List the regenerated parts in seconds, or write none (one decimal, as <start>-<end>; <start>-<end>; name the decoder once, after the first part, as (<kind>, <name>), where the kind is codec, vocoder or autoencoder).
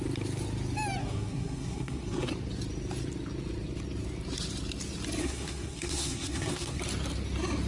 1.0-2.3 (codec, SNAC); 5.2-6.8